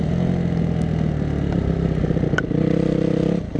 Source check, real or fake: real